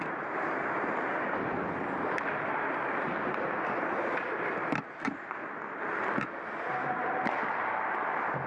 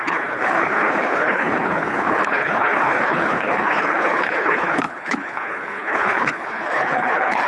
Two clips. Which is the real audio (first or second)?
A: first